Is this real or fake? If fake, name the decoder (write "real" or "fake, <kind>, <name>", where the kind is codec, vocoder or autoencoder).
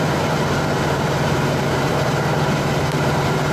fake, vocoder, BigVGAN v2